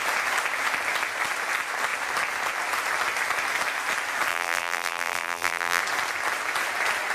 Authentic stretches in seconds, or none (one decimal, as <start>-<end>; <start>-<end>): 0.0-4.3; 5.8-7.1